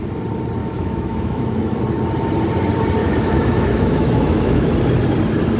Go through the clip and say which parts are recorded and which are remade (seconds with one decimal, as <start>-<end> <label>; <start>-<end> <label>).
0.0-0.6 recorded; 0.6-1.8 remade; 1.8-3.0 recorded; 3.0-4.7 remade; 4.7-5.6 recorded